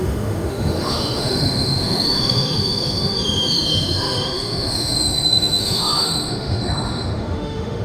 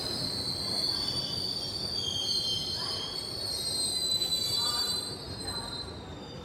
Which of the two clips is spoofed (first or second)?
first